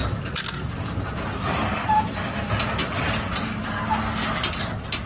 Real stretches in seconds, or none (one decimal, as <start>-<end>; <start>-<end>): 0.0-5.1